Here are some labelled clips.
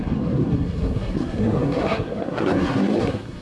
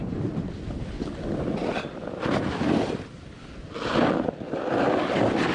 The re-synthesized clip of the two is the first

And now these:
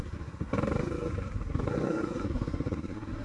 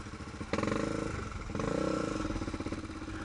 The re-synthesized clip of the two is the first